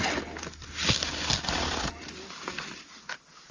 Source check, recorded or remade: recorded